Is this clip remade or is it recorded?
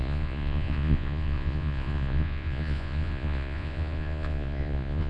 remade